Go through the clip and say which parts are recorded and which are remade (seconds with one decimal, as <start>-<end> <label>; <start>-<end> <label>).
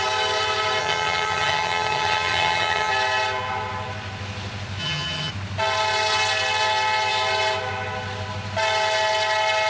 0.0-0.8 recorded; 0.8-2.9 remade; 2.9-4.8 recorded; 4.8-5.3 remade; 5.3-9.7 recorded